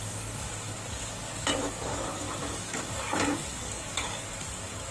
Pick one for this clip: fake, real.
fake